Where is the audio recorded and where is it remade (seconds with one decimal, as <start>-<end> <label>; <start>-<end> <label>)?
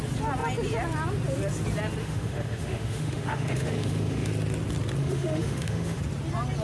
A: 0.0-2.0 recorded; 2.0-4.3 remade; 4.3-5.0 recorded; 5.0-6.0 remade; 6.0-6.6 recorded